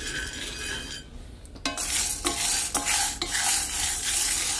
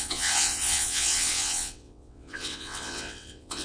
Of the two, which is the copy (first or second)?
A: second